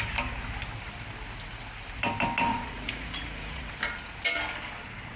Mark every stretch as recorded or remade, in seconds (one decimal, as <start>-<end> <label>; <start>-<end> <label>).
0.0-2.5 recorded; 2.5-3.7 remade; 3.7-5.2 recorded